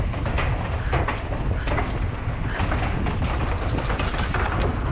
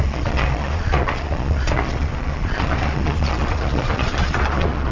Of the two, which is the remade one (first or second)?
second